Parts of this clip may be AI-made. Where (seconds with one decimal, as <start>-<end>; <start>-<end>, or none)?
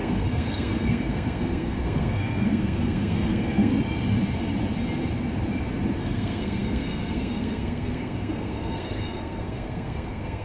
0.0-3.7; 6.0-10.4